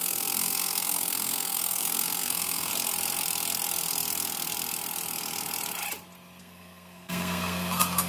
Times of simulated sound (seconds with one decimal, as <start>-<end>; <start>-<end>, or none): 0.0-2.7; 6.4-8.1